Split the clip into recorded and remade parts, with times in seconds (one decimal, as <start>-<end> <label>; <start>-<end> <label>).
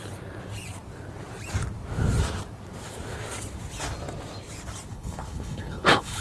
0.0-4.9 recorded; 4.9-6.2 remade